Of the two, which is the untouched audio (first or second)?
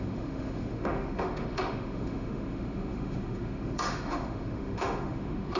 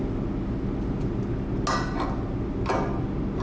second